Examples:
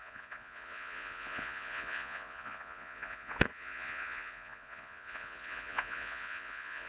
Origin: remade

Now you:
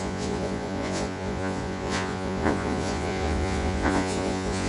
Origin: remade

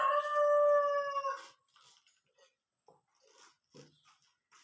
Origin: recorded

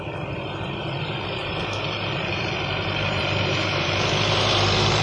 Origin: remade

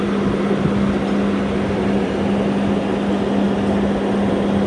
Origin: recorded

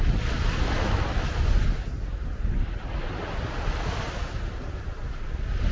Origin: recorded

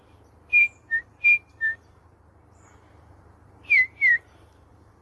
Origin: remade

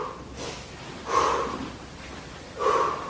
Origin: recorded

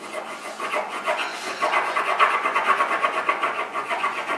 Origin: remade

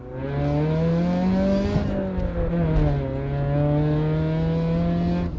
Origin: recorded